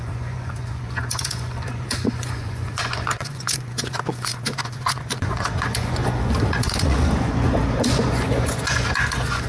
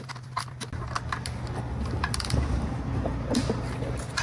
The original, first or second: second